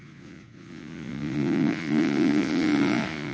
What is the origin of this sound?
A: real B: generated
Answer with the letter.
B